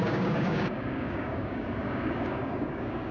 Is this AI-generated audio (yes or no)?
yes